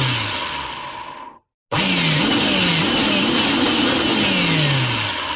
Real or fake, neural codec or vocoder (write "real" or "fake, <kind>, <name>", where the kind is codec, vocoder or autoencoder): real